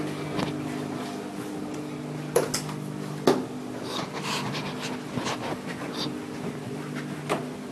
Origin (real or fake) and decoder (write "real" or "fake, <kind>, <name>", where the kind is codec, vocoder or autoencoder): real